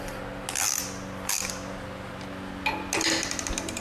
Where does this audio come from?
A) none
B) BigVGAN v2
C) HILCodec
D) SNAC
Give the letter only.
A